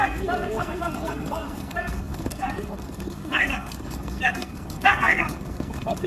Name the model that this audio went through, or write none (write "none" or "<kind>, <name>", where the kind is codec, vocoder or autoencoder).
codec, SNAC